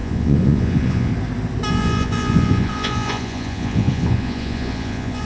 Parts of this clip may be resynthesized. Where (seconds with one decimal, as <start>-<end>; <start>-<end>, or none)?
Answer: 0.0-1.1; 1.7-5.3